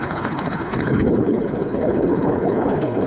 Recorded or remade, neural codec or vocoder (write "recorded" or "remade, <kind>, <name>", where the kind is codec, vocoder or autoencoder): remade, codec, HILCodec